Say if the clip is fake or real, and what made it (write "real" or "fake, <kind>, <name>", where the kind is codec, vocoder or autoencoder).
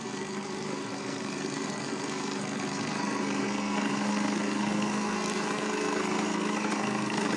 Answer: fake, codec, SNAC